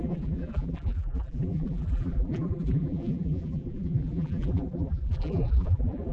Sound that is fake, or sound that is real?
fake